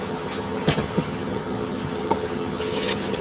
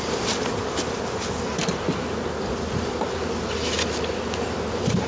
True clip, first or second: second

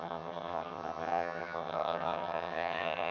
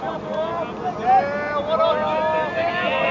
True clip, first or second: second